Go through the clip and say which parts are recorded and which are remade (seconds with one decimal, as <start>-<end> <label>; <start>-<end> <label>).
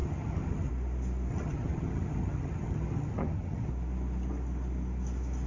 0.0-0.7 remade; 0.7-1.3 recorded; 1.3-3.7 remade; 3.7-5.5 recorded